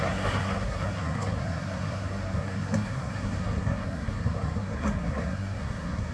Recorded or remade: remade